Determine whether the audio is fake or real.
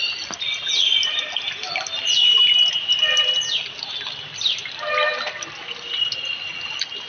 real